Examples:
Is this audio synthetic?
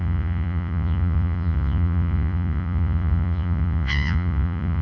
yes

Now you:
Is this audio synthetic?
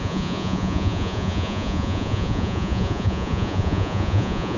yes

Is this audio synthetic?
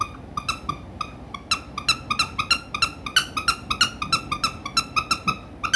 no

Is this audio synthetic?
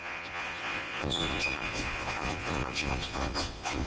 yes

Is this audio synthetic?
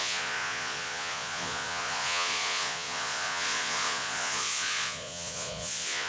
yes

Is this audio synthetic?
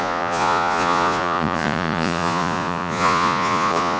yes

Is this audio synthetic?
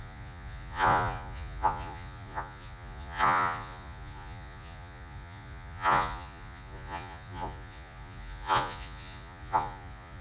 yes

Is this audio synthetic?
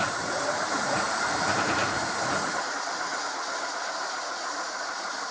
yes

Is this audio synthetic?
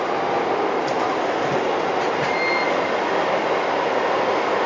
no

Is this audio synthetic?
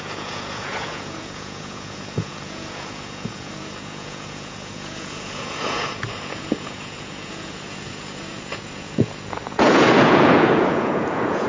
yes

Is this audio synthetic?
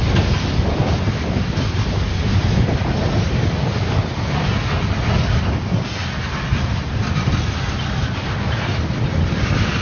no